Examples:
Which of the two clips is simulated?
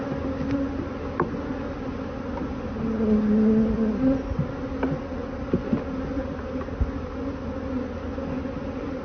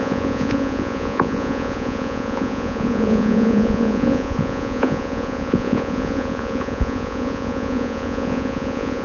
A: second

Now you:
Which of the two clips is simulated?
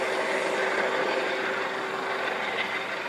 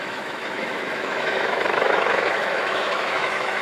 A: second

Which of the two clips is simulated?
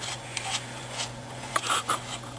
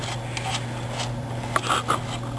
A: first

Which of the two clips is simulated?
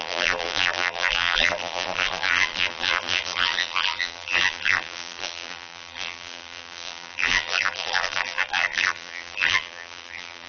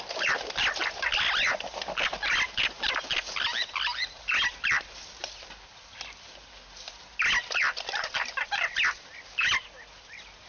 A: first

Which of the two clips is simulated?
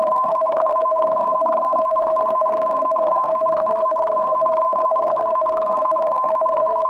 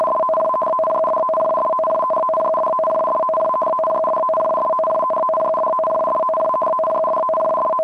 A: first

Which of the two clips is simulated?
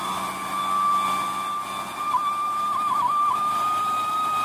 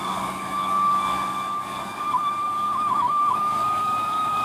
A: second